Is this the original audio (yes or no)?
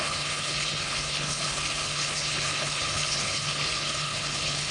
no